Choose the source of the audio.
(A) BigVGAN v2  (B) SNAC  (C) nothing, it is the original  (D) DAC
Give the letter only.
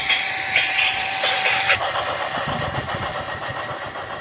C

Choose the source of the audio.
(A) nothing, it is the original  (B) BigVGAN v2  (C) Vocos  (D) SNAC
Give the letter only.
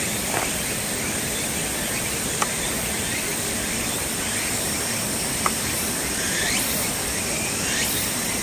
A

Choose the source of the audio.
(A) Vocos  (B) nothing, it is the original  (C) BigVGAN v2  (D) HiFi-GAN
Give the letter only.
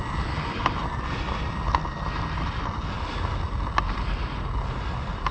B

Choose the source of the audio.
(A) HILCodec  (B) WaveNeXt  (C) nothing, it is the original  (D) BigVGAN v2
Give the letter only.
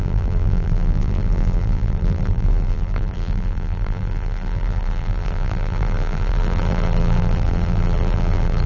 D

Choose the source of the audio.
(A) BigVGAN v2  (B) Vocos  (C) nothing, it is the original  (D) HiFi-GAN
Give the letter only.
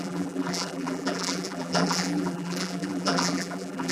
A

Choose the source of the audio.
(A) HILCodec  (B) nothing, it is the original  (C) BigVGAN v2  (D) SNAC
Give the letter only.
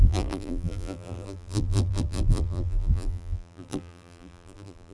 C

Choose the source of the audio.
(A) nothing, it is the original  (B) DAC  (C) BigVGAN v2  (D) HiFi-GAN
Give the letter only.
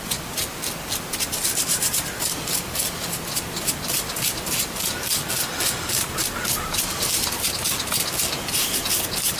A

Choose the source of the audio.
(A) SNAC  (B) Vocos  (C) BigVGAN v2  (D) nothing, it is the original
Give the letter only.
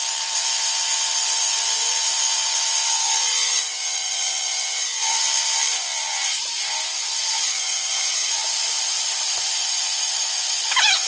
C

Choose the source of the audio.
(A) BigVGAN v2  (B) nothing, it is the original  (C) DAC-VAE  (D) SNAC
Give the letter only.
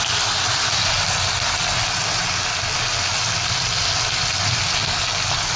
B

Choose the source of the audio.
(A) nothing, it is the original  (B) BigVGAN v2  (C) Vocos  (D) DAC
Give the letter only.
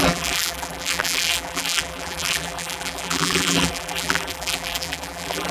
B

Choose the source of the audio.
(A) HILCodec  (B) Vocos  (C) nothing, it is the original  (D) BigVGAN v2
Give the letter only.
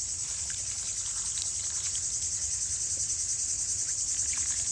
D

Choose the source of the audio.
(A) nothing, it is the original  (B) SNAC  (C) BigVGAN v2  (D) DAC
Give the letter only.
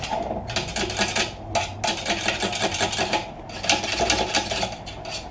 A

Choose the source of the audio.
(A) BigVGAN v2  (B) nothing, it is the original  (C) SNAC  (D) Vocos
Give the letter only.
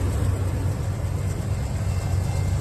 B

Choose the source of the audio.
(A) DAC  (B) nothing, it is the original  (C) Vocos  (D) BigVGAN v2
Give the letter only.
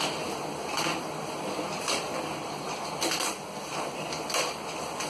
D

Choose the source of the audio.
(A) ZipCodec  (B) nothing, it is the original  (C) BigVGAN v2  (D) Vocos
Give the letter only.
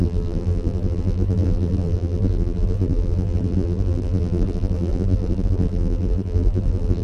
C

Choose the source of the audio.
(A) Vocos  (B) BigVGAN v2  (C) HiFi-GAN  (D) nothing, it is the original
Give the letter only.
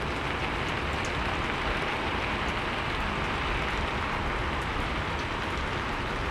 D